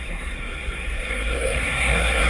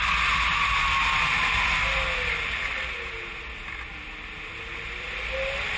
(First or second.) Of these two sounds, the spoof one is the first